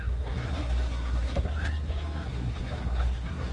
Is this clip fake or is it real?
fake